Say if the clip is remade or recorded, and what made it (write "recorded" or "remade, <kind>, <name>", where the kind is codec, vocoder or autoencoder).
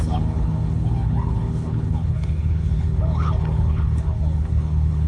remade, codec, HILCodec